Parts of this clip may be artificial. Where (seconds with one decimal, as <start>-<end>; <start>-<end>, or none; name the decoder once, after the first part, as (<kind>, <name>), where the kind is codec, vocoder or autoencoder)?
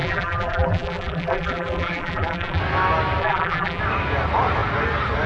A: 0.0-2.6 (vocoder, BigVGAN v2); 3.2-3.8